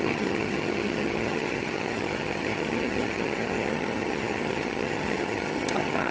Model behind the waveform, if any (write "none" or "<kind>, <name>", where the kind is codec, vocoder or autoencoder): vocoder, HiFi-GAN